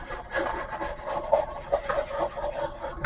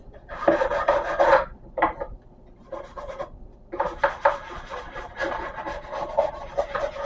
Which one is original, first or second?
first